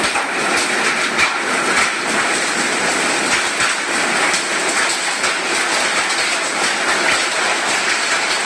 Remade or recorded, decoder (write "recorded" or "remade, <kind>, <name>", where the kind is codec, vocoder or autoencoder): recorded